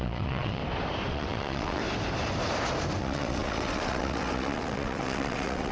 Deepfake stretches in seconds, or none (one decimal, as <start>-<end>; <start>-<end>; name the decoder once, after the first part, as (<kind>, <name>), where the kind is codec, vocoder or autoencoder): 0.0-0.6 (vocoder, WaveNeXt); 1.1-1.8; 3.0-5.7